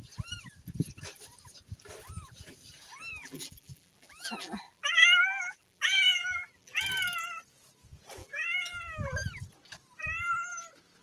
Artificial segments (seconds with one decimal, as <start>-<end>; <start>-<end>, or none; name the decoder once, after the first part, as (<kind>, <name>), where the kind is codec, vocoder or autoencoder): 3.2-6.8 (vocoder, BigVGAN v2); 8.2-8.8